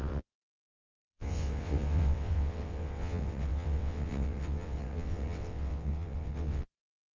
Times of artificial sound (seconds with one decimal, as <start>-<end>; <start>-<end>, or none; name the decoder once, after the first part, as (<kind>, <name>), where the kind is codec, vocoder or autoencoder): 0.0-7.2 (vocoder, WaveNeXt)